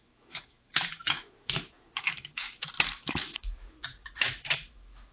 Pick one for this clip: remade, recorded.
remade